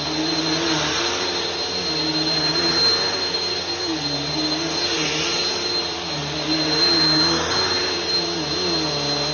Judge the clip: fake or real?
real